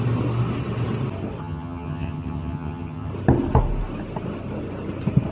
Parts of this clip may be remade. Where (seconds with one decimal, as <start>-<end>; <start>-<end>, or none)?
1.4-3.1